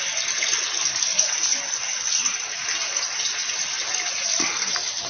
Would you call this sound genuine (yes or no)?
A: yes